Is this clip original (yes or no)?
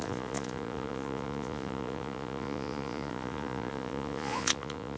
no